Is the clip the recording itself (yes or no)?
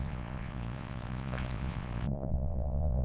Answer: no